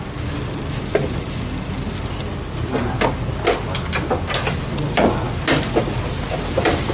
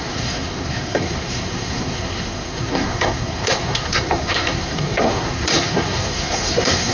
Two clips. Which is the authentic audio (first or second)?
first